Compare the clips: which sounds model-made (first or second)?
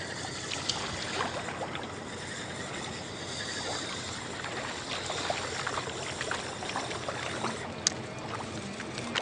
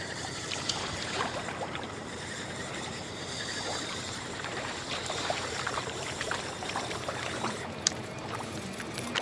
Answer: second